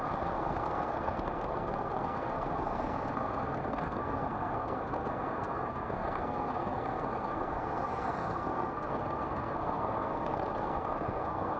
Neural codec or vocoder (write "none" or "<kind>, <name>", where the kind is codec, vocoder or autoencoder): codec, SNAC